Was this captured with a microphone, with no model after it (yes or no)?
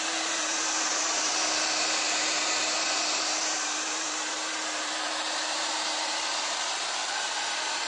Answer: no